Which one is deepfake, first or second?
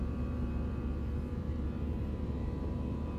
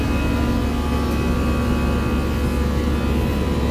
first